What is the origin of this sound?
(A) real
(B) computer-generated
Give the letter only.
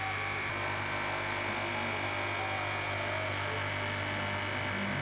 A